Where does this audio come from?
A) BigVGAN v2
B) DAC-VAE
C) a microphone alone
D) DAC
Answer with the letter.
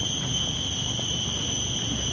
C